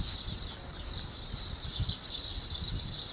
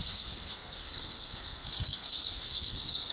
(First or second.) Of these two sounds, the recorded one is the first